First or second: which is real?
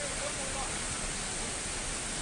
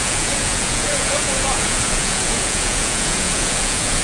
first